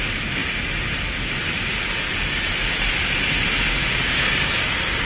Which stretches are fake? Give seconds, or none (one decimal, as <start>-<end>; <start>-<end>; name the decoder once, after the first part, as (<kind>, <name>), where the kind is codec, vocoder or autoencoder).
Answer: 3.8-5.0 (codec, DAC)